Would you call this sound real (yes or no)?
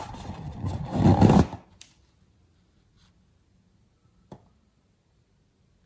yes